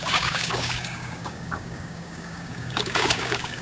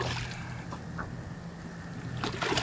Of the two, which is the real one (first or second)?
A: second